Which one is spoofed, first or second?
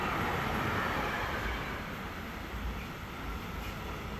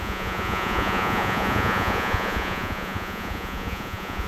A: second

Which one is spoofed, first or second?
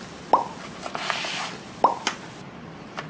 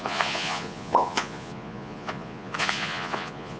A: second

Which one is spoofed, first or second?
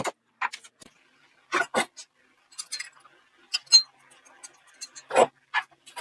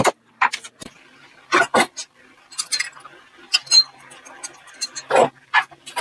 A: second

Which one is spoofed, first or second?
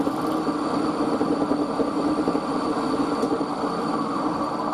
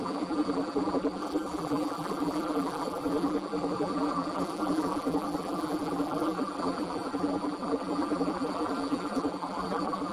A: second